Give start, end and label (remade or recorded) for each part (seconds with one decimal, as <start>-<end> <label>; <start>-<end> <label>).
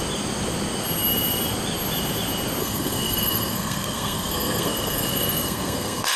0.0-2.6 recorded; 2.6-6.2 remade